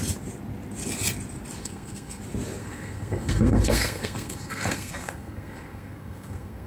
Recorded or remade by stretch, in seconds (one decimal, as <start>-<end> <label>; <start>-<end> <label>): 0.0-1.6 recorded; 1.6-2.2 remade; 2.2-2.6 recorded; 2.6-6.7 remade